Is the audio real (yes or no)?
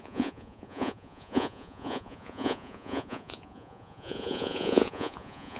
no